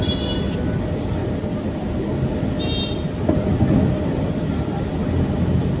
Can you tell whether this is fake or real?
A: real